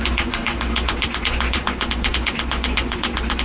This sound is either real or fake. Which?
fake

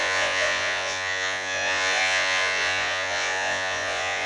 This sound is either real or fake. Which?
fake